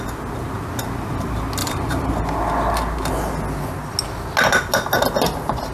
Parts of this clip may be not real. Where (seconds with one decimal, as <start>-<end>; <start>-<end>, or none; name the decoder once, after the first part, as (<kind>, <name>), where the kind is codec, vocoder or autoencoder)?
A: 1.6-2.1 (vocoder, BigVGAN v2)